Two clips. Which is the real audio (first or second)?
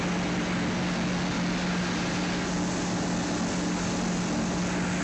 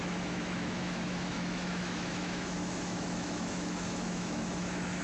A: first